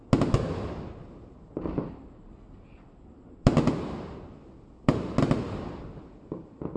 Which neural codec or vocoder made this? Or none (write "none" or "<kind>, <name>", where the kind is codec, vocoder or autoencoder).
none